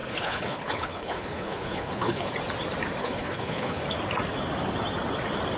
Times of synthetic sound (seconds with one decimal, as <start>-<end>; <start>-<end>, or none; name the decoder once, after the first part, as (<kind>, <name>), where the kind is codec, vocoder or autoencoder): 0.0-2.3 (codec, HILCodec); 3.0-3.8